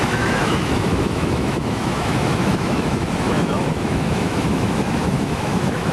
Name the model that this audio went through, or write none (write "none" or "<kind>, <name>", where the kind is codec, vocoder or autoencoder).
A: autoencoder, DAC-VAE